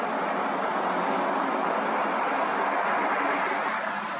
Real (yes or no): yes